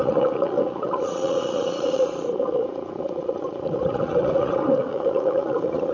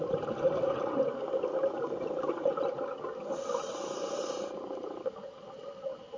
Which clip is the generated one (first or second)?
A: first